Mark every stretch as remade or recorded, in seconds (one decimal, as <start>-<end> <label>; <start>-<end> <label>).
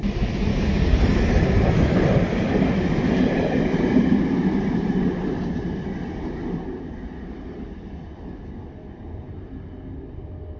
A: 0.0-0.5 recorded; 0.5-1.0 remade; 1.0-10.6 recorded